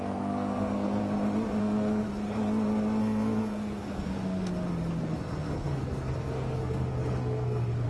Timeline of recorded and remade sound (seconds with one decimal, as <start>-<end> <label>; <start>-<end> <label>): 0.0-1.0 remade; 1.0-1.6 recorded; 1.6-2.0 remade; 2.0-3.0 recorded; 3.0-4.5 remade; 4.5-5.1 recorded; 5.1-7.9 remade